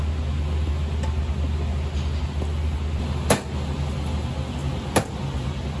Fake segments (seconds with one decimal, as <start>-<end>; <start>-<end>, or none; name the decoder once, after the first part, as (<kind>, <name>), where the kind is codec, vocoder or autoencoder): none